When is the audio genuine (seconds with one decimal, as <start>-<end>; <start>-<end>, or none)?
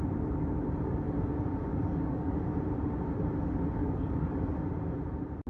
0.0-1.7; 2.4-3.8; 4.6-5.5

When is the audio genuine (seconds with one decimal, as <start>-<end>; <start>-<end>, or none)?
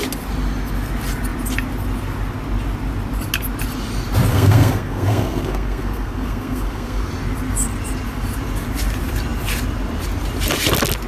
0.0-4.3; 7.1-11.1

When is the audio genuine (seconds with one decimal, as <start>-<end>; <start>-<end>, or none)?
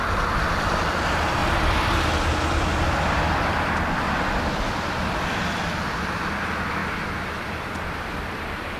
1.4-4.6; 6.8-7.4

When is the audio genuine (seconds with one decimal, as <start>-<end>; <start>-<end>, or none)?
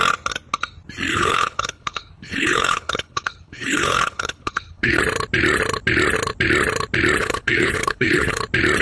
0.0-1.1; 5.0-7.2; 8.4-8.8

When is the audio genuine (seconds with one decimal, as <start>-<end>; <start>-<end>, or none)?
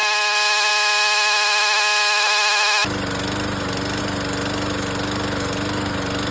0.0-6.3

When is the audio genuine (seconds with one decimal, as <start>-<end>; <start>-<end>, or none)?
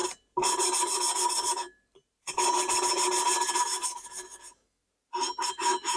0.0-3.6; 4.8-5.5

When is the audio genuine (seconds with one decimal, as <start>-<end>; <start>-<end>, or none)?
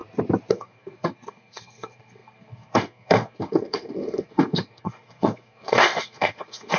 0.0-0.5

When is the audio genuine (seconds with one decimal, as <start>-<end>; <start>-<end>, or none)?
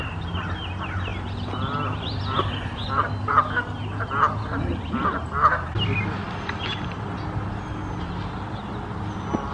0.0-9.5